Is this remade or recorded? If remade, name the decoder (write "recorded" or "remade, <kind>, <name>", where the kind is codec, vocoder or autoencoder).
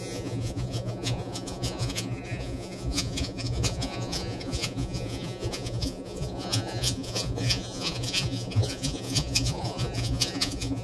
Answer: remade, vocoder, Vocos